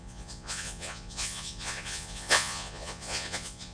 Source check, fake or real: fake